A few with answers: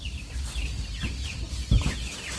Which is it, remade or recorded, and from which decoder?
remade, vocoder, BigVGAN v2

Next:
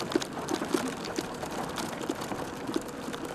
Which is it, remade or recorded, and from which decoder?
remade, vocoder, BigVGAN v2